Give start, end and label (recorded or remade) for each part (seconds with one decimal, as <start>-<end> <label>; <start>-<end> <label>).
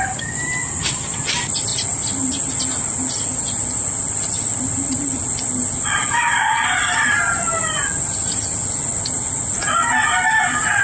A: 0.0-10.8 recorded